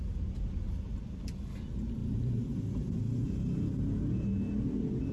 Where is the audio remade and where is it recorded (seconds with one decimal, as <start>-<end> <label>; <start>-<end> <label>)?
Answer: 0.0-2.0 recorded; 2.0-5.1 remade